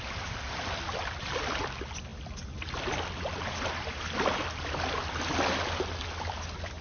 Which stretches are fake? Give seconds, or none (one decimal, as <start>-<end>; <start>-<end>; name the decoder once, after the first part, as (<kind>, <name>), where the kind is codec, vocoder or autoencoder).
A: none